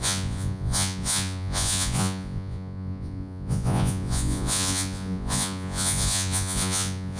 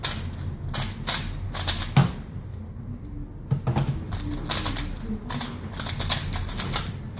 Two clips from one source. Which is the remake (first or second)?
first